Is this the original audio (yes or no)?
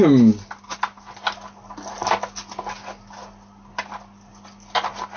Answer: yes